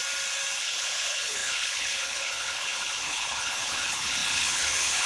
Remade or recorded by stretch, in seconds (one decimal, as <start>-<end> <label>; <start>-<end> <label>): 0.0-0.6 recorded; 0.6-5.1 remade